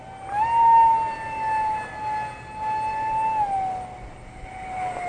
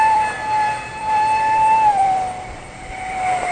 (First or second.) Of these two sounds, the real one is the first